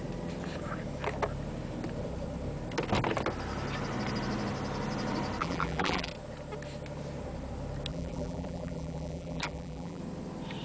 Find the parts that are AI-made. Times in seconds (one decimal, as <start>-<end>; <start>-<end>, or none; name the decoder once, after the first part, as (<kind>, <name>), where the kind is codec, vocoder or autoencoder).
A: 5.4-6.1 (vocoder, BigVGAN v2); 7.9-10.0